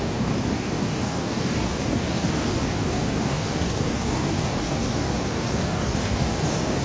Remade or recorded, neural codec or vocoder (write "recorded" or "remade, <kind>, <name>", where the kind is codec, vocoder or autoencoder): remade, codec, DAC